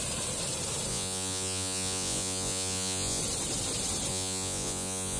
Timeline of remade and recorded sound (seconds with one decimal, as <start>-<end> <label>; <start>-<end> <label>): 0.0-0.9 recorded; 0.9-3.2 remade; 3.2-4.1 recorded; 4.1-5.2 remade